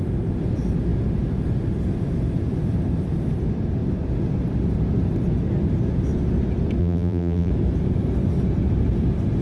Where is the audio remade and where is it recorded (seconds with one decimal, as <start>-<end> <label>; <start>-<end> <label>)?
0.0-6.8 recorded; 6.8-7.5 remade; 7.5-9.4 recorded